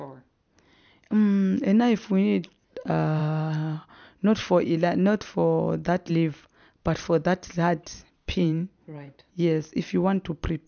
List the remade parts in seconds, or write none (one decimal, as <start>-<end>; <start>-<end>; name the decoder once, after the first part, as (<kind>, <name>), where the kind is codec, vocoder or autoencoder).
8.2-9.3 (vocoder, Vocos)